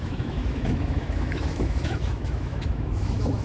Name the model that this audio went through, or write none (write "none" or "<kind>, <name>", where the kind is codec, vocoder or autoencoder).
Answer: autoencoder, DAC-VAE